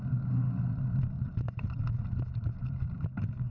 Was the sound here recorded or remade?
recorded